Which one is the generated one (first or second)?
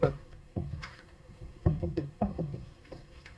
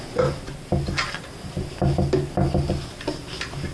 first